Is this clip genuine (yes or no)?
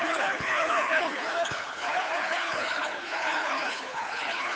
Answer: no